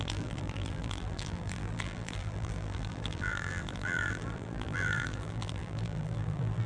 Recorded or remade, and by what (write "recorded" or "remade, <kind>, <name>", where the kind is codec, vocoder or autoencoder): remade, vocoder, BigVGAN v2